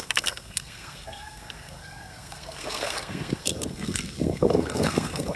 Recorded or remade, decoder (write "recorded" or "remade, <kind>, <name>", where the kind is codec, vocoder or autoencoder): remade, codec, SNAC